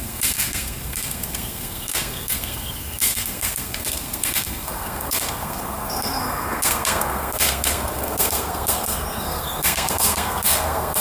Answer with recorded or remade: remade